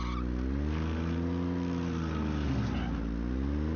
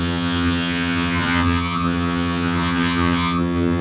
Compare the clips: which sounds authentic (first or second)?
first